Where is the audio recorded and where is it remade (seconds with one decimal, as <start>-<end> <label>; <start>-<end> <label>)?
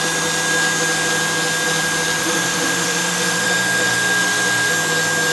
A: 0.0-2.2 recorded; 2.2-4.7 remade; 4.7-5.3 recorded